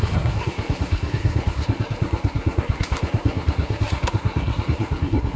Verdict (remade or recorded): remade